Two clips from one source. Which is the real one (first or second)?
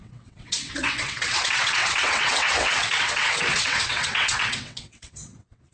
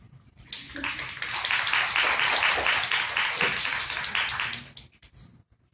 second